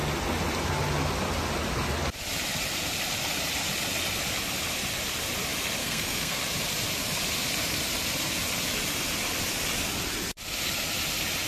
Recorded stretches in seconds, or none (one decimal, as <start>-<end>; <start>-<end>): 0.0-5.8; 6.4-11.5